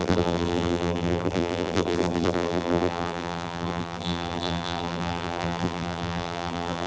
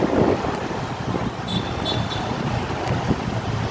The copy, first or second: first